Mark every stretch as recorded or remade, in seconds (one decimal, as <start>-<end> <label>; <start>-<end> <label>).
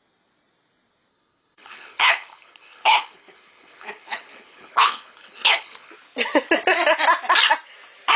0.0-1.1 recorded; 1.1-5.9 remade; 5.9-8.2 recorded